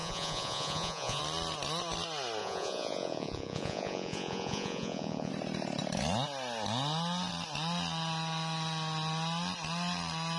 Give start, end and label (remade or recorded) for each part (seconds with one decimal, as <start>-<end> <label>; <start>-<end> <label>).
0.0-1.2 remade; 1.2-2.4 recorded; 2.4-5.3 remade; 5.3-10.4 recorded